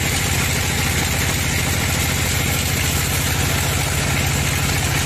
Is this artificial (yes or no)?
no